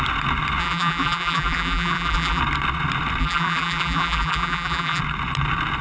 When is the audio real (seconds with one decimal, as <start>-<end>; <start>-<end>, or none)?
0.0-0.6; 2.4-3.2; 5.0-5.8

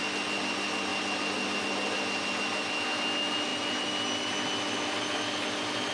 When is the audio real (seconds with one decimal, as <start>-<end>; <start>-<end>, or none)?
0.0-5.9

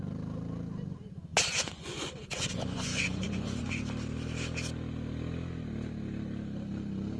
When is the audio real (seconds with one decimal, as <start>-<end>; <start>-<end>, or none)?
0.0-1.3; 3.8-7.2